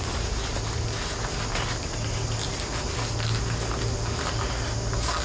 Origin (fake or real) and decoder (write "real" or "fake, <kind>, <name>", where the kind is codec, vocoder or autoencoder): real